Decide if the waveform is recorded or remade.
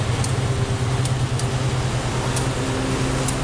recorded